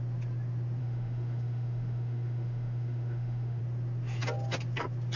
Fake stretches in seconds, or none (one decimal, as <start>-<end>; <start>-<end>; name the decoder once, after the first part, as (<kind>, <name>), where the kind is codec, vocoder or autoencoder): 0.8-3.6 (autoencoder, DAC-VAE)